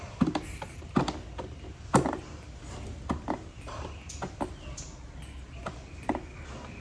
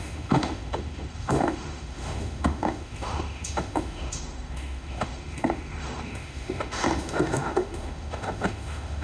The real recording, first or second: first